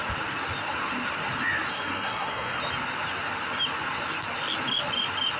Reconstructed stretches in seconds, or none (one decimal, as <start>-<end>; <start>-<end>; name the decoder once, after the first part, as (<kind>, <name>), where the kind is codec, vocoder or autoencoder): 1.7-2.6 (codec, SNAC)

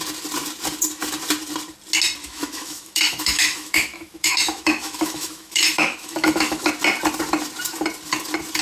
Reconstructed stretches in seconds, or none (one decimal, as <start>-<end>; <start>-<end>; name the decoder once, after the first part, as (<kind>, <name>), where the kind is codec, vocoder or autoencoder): 2.2-6.7 (autoencoder, DAC-VAE)

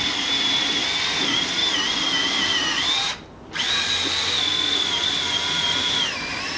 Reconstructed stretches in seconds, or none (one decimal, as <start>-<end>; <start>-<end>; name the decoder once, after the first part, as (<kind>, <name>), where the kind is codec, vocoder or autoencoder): none

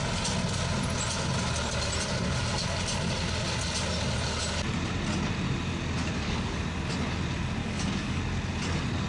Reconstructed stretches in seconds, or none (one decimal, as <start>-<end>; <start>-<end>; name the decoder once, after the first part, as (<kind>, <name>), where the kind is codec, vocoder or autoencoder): 6.0-6.6 (codec, DAC); 7.6-8.2

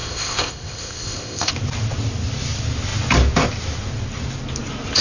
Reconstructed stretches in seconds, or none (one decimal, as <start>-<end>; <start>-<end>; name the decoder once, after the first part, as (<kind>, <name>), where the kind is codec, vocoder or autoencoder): 0.0-1.5 (codec, ZipCodec)

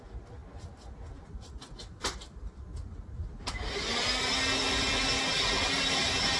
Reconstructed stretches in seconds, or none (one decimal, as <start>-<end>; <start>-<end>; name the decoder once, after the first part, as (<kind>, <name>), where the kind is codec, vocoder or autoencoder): none

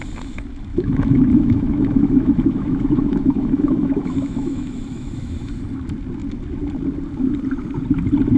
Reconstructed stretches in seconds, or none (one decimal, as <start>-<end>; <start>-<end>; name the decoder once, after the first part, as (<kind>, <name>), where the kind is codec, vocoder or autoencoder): 0.7-5.4 (autoencoder, DAC-VAE)

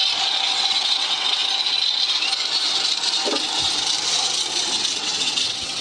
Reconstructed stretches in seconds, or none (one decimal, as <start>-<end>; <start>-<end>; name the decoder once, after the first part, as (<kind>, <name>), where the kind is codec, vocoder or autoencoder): 0.5-1.4 (vocoder, WaveNeXt); 4.9-5.8